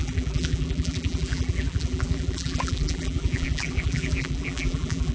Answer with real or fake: fake